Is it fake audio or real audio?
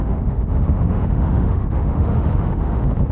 fake